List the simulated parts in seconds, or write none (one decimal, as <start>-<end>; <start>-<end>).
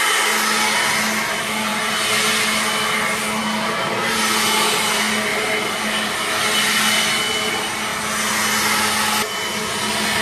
none